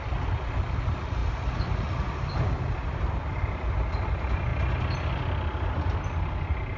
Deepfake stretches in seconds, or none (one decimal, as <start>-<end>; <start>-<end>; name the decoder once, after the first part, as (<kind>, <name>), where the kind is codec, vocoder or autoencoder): none